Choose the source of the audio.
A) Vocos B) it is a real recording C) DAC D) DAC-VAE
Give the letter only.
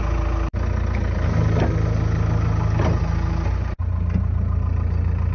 B